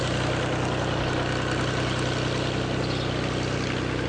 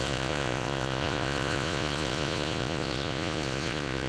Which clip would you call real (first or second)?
first